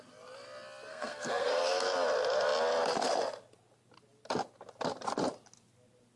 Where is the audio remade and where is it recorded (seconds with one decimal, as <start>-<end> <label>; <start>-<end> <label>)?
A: 0.0-0.9 recorded; 0.9-1.6 remade; 1.6-6.2 recorded